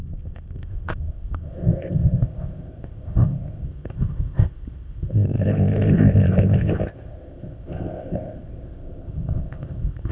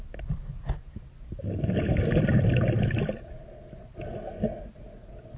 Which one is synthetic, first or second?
first